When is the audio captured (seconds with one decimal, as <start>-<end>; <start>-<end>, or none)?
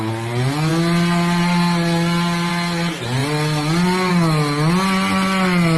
0.0-5.8